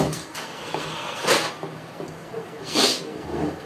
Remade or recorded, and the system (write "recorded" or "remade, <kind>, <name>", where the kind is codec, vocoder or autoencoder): remade, codec, SNAC